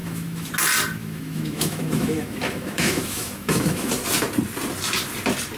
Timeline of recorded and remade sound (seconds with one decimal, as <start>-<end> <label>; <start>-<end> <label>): 0.0-0.5 remade; 0.5-1.0 recorded; 1.0-3.9 remade; 3.9-5.6 recorded